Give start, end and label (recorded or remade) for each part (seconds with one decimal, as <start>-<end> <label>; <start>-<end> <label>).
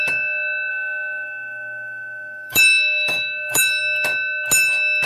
0.0-0.7 recorded; 0.7-3.8 remade; 3.8-5.1 recorded